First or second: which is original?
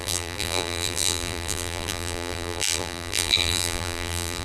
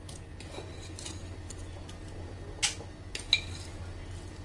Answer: second